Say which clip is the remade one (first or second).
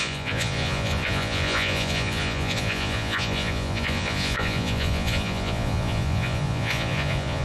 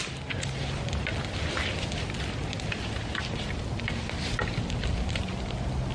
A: first